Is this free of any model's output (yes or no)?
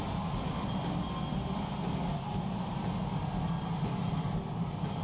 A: yes